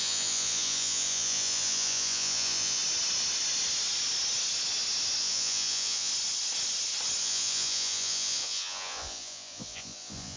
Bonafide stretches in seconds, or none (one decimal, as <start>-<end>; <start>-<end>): 2.8-5.2; 6.1-7.2